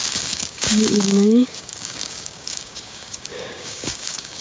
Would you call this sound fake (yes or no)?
yes